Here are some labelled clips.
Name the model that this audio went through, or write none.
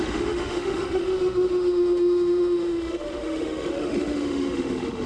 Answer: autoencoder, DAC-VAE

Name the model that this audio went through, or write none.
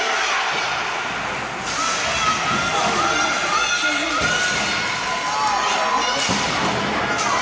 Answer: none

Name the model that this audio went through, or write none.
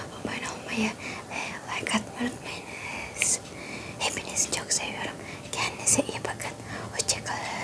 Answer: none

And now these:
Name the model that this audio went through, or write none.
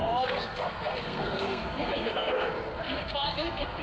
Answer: codec, SNAC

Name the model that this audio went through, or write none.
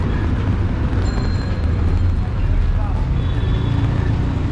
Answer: none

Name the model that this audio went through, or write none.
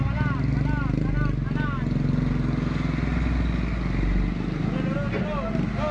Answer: none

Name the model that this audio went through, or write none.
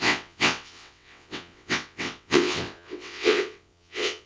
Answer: vocoder, WaveNeXt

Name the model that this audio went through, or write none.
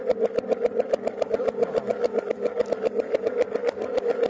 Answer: none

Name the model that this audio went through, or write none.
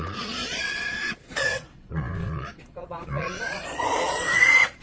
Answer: vocoder, Vocos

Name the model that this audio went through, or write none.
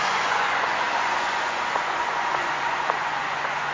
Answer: vocoder, Vocos